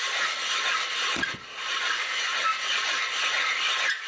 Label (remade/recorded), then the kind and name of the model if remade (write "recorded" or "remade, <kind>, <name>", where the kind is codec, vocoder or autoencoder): recorded